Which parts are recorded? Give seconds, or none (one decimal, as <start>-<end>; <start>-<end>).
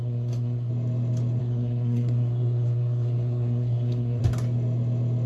0.7-1.4; 4.2-5.3